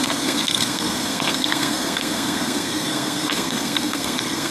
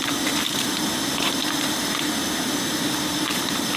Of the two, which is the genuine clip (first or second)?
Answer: second